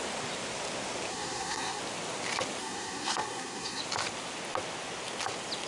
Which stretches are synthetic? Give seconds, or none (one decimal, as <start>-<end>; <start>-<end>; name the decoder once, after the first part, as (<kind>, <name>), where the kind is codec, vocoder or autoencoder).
1.1-1.8 (codec, SNAC); 2.6-3.8